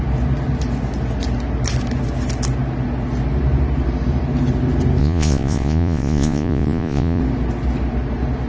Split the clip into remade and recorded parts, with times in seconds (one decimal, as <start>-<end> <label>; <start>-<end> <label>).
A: 0.0-5.0 recorded; 5.0-7.2 remade; 7.2-8.5 recorded